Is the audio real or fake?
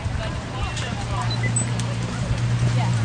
real